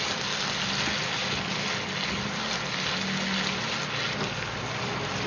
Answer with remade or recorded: recorded